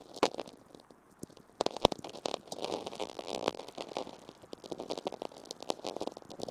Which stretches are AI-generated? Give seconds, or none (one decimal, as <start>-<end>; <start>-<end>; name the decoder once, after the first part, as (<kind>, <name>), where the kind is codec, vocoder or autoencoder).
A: 3.0-3.6 (vocoder, BigVGAN v2)